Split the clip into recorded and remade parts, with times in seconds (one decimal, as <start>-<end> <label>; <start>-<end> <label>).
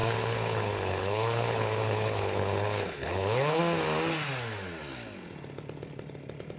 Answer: 0.0-3.6 remade; 3.6-6.6 recorded